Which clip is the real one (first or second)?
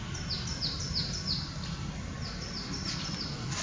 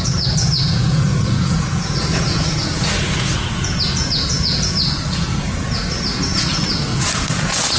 first